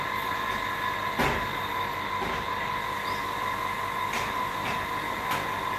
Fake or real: real